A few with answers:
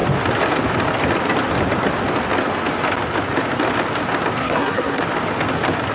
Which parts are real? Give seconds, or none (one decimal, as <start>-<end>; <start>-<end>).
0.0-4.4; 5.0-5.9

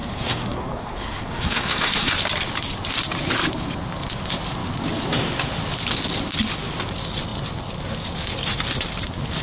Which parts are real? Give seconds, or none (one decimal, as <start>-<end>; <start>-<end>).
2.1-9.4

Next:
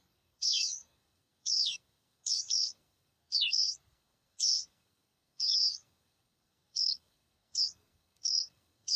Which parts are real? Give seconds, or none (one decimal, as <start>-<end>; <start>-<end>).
none